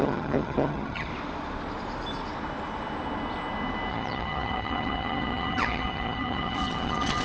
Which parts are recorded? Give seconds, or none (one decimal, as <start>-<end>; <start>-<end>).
1.1-3.9